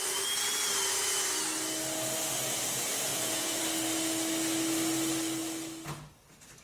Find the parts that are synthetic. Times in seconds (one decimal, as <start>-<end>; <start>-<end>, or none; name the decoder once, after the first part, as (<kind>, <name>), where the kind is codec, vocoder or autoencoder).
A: 3.1-3.6 (vocoder, Vocos)